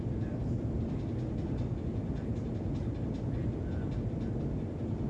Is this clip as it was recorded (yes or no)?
yes